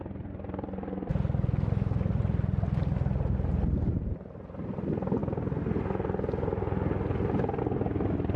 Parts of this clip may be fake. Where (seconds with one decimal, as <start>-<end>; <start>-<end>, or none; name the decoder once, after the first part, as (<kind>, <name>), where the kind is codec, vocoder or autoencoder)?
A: none